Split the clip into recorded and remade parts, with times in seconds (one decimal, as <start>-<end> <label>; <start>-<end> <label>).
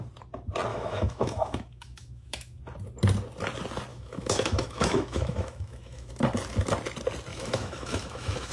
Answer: 0.0-0.7 recorded; 0.7-2.6 remade; 2.6-3.9 recorded; 3.9-6.1 remade; 6.1-7.3 recorded; 7.3-8.5 remade